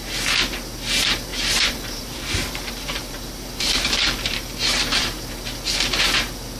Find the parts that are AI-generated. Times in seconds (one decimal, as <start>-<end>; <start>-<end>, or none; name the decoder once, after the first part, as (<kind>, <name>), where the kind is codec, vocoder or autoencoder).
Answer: 1.3-5.3 (vocoder, BigVGAN v2)